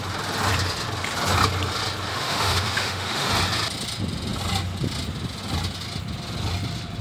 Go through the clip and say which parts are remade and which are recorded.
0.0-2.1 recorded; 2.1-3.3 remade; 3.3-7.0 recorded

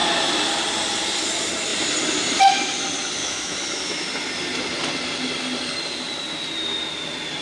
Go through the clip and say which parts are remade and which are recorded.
0.0-3.2 recorded; 3.2-4.1 remade; 4.1-7.4 recorded

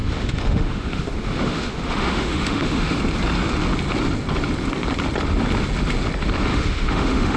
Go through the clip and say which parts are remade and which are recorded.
0.0-3.0 remade; 3.0-6.5 recorded; 6.5-7.4 remade